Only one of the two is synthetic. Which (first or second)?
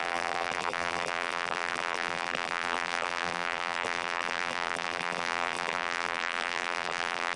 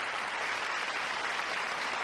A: first